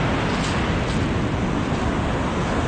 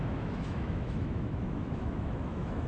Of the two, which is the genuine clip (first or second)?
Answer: first